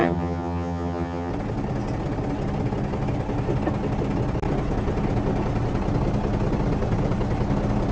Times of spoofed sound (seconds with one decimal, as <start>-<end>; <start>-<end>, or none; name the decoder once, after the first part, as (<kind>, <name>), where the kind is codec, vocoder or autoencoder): 0.0-1.3 (vocoder, HiFi-GAN)